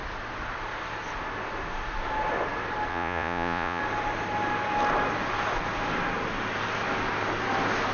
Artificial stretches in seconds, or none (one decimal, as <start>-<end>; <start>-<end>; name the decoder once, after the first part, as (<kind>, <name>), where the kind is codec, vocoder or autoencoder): 2.9-3.8 (vocoder, Vocos)